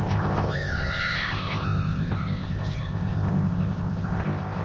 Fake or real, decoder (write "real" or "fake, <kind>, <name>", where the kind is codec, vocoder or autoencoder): fake, codec, ZipCodec